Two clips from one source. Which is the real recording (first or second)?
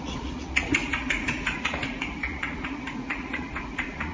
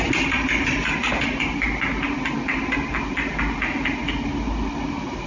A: second